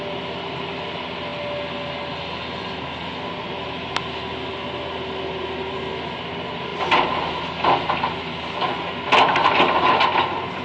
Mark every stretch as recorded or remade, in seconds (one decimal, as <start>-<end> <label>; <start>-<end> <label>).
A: 0.0-10.6 recorded